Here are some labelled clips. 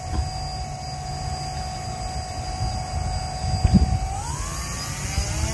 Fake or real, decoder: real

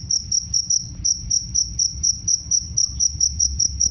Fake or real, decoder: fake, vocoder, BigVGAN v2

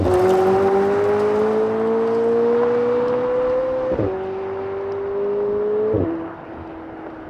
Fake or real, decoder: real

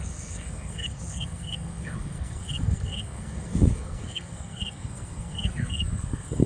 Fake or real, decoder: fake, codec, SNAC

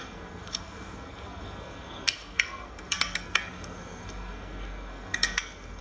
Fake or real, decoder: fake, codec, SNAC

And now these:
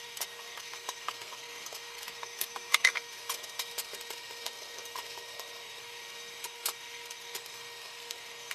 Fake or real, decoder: fake, codec, SNAC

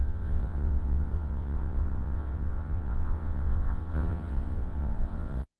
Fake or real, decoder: fake, vocoder, WaveNeXt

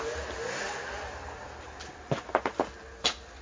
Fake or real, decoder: real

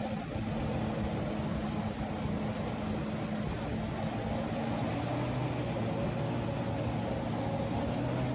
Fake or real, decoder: real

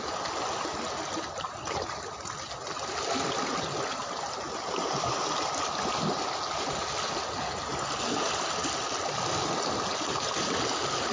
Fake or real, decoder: real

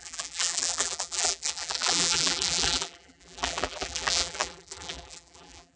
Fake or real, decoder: fake, vocoder, BigVGAN v2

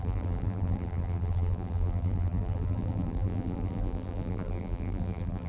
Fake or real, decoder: fake, vocoder, BigVGAN v2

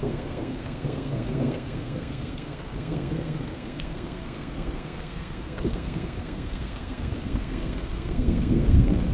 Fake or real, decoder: fake, codec, SNAC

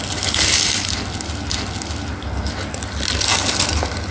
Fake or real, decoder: real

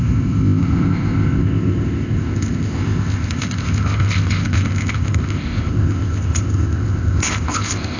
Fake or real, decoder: fake, codec, ZipCodec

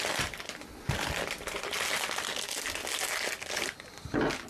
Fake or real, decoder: real